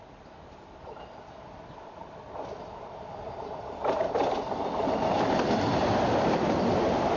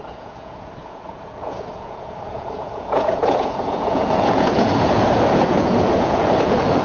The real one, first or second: first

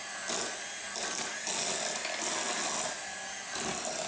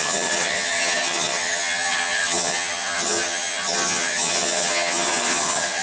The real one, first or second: first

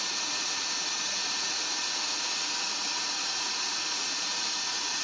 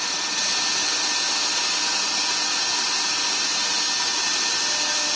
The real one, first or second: second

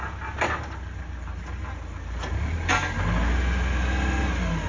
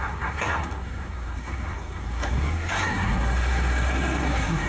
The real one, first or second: first